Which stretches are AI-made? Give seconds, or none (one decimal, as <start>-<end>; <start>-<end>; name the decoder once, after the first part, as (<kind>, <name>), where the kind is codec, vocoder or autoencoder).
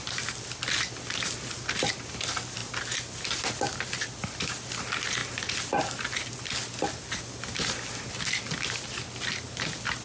none